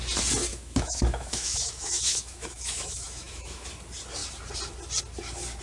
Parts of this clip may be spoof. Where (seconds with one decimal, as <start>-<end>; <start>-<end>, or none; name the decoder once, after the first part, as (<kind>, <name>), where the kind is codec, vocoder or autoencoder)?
0.5-3.7 (autoencoder, DAC-VAE)